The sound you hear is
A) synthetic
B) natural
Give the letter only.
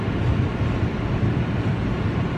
A